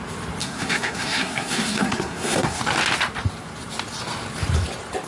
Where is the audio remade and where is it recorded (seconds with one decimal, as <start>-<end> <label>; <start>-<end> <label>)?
0.0-0.4 recorded; 0.4-2.6 remade; 2.6-5.1 recorded